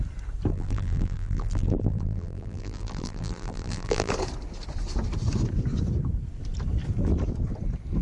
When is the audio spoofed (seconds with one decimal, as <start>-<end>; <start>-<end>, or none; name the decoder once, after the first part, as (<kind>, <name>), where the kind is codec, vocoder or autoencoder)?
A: 0.5-4.1 (vocoder, BigVGAN v2)